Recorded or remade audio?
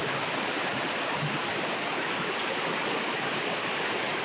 recorded